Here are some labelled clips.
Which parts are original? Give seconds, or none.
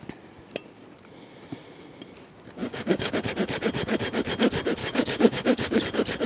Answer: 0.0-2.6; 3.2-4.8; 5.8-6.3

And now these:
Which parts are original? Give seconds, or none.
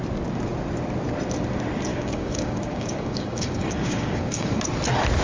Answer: 0.0-1.9; 4.6-5.2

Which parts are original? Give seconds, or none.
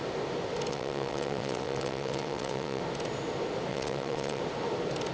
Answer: 0.0-0.7; 2.8-3.7; 4.4-5.1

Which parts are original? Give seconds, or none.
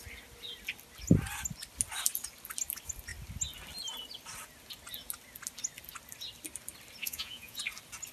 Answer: 0.0-7.0; 7.6-8.1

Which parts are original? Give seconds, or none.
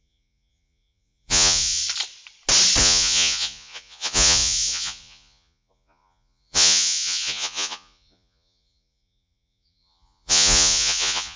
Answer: 1.8-2.8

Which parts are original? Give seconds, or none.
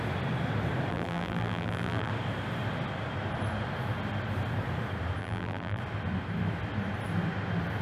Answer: 0.0-0.9; 2.1-5.2; 5.8-7.8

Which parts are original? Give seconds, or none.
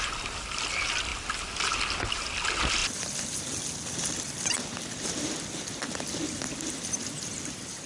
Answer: 0.0-7.9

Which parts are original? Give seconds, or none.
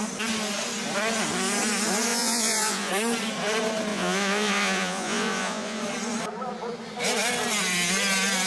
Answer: 0.0-2.1; 2.9-3.9; 5.8-8.5